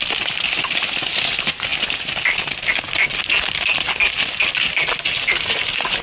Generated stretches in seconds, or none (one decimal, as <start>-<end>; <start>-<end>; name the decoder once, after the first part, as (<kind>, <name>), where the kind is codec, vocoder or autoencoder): none